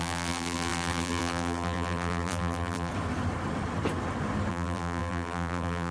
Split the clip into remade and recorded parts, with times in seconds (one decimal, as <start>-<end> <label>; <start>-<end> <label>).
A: 0.0-2.9 remade; 2.9-4.5 recorded; 4.5-5.9 remade